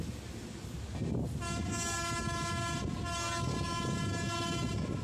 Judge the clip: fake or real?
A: real